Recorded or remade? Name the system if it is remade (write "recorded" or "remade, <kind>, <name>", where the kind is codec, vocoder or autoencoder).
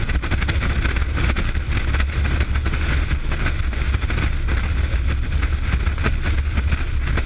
recorded